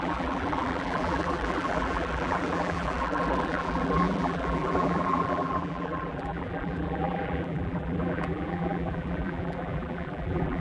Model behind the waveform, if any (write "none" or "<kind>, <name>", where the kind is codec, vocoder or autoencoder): vocoder, BigVGAN v2